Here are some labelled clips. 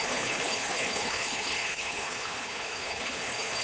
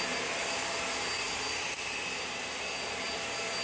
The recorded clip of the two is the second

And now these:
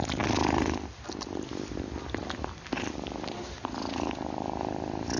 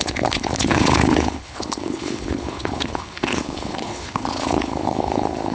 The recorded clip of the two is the first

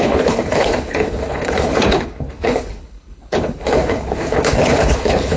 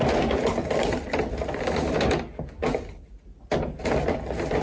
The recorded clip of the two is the second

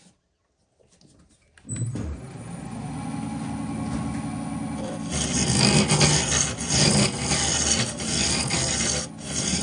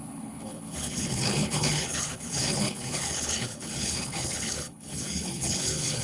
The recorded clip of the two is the first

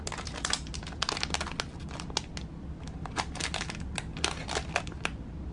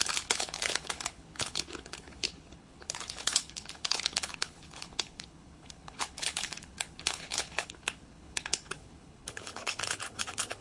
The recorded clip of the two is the first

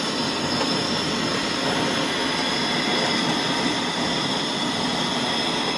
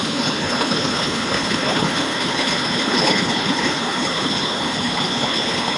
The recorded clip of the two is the first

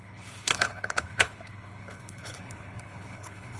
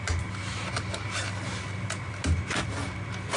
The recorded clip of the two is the second